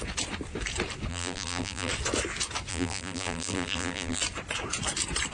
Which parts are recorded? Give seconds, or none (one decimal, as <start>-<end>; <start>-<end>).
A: 0.0-1.1; 1.9-2.7; 4.2-5.3